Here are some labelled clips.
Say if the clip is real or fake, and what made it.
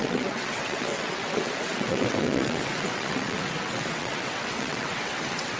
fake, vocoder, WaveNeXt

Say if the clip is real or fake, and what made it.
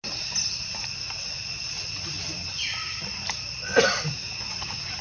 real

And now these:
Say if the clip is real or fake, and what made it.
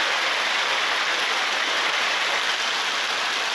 real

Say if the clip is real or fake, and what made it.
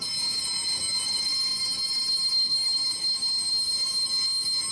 real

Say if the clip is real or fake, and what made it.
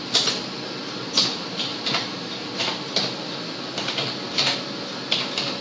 real